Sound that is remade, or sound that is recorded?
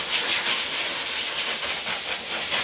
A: recorded